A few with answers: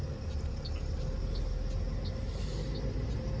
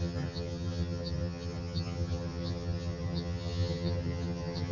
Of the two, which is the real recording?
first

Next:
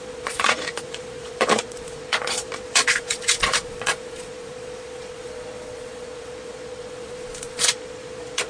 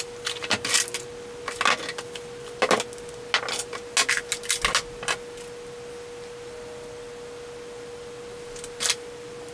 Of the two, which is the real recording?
second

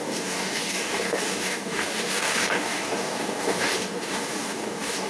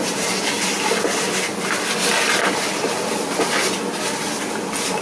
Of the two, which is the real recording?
second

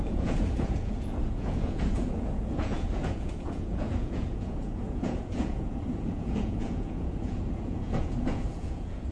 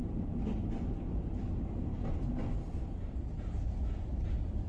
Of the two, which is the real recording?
second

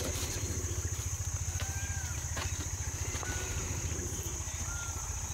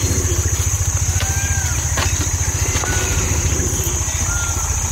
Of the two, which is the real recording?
second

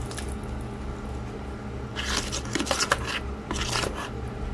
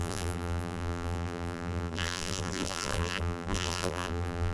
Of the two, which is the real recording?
first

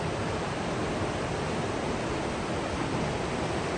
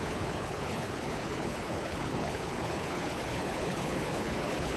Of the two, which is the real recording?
first